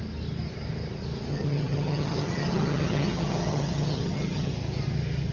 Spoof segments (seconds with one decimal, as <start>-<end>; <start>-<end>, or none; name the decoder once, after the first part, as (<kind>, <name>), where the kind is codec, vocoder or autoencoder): 1.3-4.5 (vocoder, HiFi-GAN)